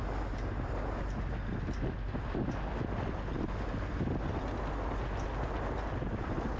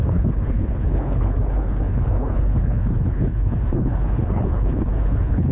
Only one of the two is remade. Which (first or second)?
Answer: second